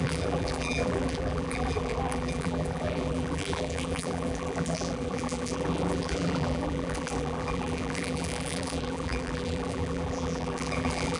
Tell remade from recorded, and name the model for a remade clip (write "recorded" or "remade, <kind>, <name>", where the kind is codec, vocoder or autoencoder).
remade, vocoder, BigVGAN v2